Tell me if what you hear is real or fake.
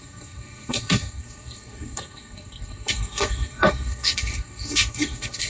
fake